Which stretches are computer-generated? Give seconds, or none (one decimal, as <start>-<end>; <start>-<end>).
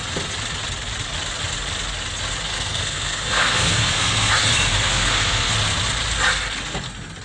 2.5-4.3; 4.7-5.5